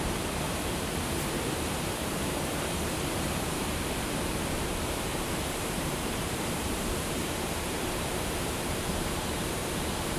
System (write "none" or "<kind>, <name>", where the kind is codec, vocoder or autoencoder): vocoder, BigVGAN v2